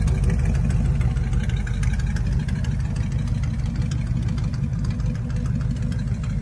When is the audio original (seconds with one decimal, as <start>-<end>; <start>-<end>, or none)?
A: 0.0-4.5; 5.2-6.4